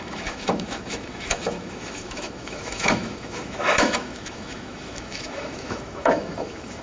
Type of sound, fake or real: fake